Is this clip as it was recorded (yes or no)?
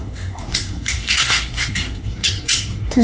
no